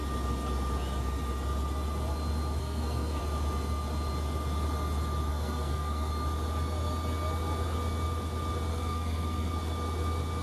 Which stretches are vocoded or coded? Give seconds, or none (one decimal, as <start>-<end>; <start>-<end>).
2.6-3.2; 5.3-6.1; 8.7-9.5